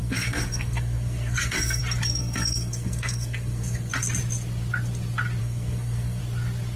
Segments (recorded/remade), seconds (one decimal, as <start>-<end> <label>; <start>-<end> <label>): 0.0-1.8 remade; 1.8-2.2 recorded; 2.2-3.9 remade; 3.9-5.4 recorded; 5.4-6.2 remade; 6.2-6.8 recorded